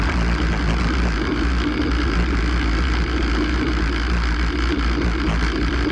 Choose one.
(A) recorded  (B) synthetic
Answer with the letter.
A